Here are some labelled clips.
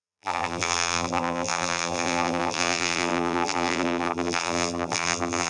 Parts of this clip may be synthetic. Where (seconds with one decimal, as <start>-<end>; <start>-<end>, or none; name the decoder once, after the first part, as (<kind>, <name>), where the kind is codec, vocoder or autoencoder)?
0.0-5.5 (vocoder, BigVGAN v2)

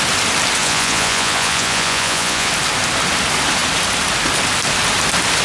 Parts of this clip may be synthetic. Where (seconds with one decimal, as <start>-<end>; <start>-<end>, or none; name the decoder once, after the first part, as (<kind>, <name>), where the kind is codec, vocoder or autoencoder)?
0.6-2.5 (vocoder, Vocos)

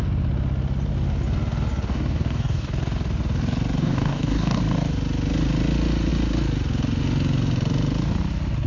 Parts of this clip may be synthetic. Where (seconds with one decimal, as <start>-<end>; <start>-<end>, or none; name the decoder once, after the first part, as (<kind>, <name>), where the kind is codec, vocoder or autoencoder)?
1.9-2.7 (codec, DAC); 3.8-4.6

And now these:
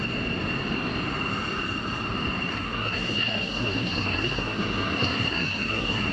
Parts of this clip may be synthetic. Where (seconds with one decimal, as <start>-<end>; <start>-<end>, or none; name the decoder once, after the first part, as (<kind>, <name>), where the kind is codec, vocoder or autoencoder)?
2.5-6.1 (codec, SNAC)

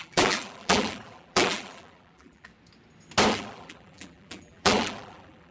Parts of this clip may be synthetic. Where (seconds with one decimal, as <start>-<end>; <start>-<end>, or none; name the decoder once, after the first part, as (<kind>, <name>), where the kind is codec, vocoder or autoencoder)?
0.0-2.5 (vocoder, BigVGAN v2); 3.3-5.5

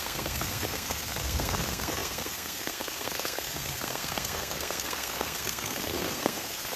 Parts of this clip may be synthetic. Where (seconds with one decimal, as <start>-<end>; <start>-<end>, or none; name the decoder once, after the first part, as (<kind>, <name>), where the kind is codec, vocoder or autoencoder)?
0.0-6.8 (codec, SNAC)

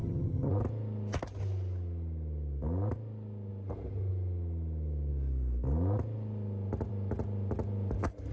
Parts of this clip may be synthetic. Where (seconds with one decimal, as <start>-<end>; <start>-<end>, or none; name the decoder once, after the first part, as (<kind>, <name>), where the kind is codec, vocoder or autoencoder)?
0.0-0.5 (vocoder, HiFi-GAN)